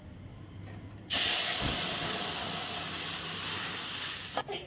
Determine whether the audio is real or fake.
real